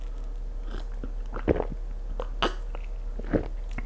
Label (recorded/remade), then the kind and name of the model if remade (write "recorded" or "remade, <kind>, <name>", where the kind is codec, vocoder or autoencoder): recorded